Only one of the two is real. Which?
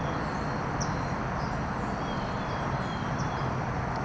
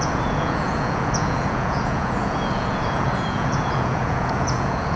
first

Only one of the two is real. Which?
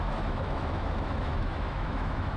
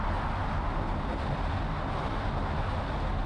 second